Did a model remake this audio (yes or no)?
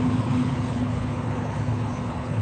yes